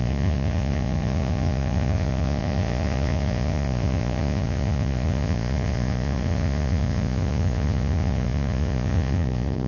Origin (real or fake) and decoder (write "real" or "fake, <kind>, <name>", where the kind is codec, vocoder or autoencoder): fake, vocoder, Vocos